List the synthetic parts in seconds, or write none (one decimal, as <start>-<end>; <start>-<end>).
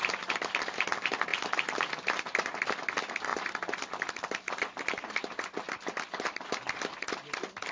none